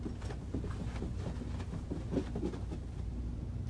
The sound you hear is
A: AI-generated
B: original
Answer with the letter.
B